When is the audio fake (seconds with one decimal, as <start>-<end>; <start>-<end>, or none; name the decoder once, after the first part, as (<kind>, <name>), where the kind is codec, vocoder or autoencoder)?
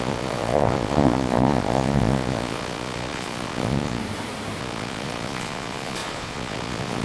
0.0-4.0 (vocoder, Vocos); 4.6-7.0